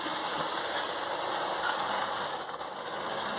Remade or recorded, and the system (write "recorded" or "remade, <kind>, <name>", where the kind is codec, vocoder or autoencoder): recorded